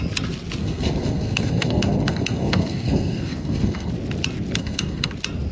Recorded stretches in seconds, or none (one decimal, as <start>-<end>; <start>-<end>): 0.0-0.6; 3.9-4.6; 5.1-5.5